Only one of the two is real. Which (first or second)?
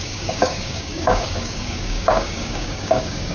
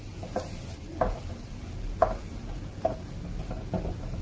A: second